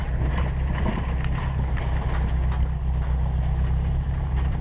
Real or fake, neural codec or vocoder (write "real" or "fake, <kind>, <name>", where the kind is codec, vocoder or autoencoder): real